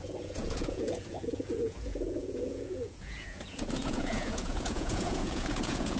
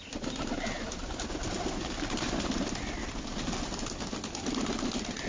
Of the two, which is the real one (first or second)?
second